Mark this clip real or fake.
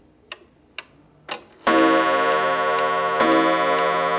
real